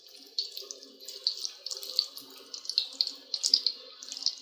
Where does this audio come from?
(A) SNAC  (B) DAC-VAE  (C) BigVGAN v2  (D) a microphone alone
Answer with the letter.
D